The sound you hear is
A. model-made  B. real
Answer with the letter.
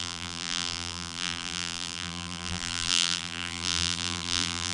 A